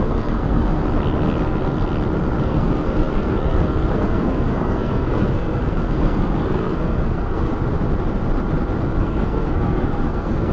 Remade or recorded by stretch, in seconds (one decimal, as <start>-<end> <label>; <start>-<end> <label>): 0.0-0.8 remade; 0.8-2.4 recorded; 2.4-7.5 remade; 7.5-9.0 recorded; 9.0-10.5 remade